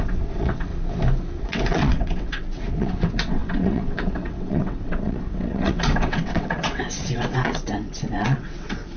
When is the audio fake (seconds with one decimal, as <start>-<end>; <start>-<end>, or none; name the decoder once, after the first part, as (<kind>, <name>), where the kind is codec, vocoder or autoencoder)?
0.0-0.7 (vocoder, WaveNeXt); 1.4-9.0